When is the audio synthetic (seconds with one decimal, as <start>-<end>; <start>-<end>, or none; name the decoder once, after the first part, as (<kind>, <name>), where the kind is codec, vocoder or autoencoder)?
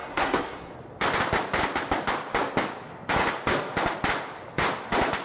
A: 0.0-0.7 (codec, SNAC)